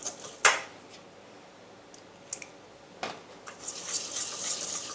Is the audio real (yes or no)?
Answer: yes